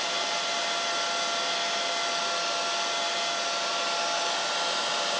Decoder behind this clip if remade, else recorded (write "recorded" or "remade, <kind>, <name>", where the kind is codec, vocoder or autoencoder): recorded